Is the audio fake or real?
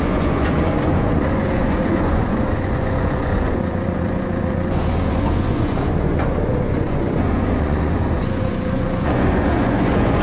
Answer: fake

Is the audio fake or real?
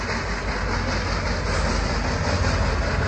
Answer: real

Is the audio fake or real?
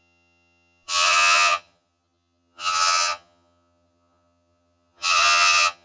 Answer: fake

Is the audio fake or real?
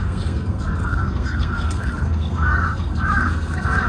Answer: fake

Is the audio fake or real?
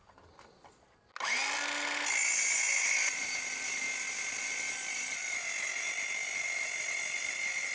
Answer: real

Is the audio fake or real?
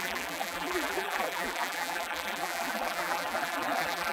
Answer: fake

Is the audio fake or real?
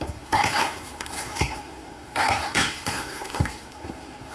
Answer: fake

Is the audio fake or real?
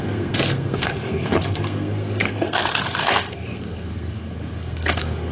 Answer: fake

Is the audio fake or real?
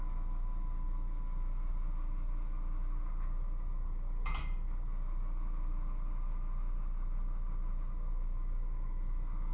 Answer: real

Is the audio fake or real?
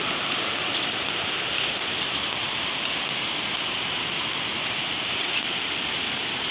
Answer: real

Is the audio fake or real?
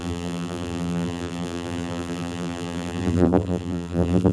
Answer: fake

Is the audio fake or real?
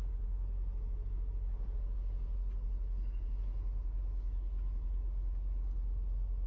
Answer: real